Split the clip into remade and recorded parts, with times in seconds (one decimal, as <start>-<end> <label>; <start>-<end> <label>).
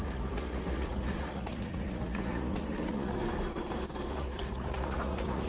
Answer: 0.0-3.2 remade; 3.2-4.1 recorded; 4.1-5.5 remade